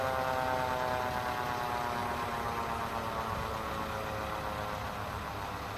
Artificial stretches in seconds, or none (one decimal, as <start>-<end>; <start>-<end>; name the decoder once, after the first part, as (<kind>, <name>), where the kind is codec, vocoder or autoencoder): 2.0-3.4 (vocoder, BigVGAN v2)